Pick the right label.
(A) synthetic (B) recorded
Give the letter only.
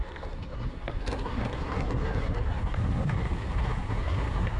A